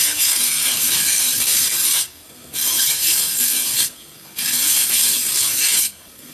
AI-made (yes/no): yes